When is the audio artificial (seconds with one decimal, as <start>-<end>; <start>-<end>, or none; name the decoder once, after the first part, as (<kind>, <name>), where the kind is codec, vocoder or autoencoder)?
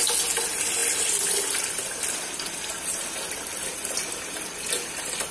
none